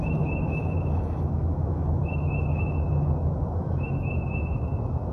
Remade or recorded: remade